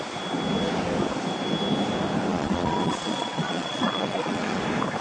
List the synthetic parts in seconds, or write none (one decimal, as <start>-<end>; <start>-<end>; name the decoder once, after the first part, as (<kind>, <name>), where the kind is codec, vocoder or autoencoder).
2.3-4.6 (vocoder, Vocos)